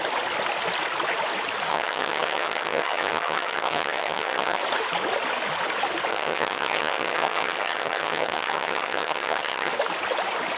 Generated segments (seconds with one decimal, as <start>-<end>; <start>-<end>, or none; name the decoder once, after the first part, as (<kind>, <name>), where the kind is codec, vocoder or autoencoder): 1.7-4.6 (vocoder, HiFi-GAN); 6.1-9.7